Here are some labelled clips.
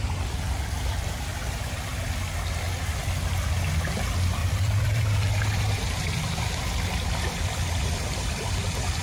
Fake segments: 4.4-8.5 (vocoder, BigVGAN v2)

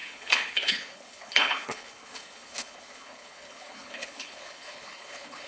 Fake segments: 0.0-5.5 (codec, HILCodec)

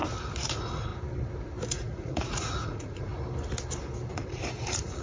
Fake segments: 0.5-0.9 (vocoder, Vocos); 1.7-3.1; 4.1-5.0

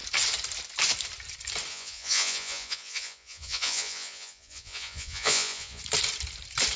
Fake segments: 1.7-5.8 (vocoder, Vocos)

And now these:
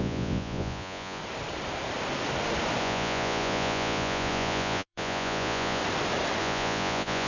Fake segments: 0.0-1.2 (vocoder, Vocos); 2.8-5.8; 6.4-7.3